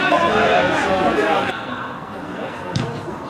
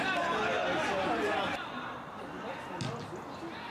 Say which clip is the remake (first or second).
first